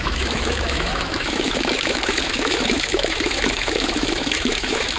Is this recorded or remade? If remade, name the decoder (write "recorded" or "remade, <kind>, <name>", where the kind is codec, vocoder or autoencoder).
remade, autoencoder, DAC-VAE